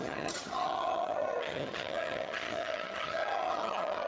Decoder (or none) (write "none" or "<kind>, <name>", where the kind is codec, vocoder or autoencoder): vocoder, HiFi-GAN